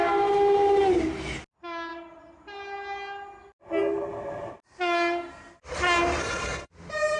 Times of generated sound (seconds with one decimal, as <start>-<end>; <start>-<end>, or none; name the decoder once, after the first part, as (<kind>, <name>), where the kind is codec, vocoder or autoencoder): 6.2-6.7 (codec, HILCodec)